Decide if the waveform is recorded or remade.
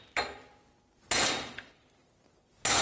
recorded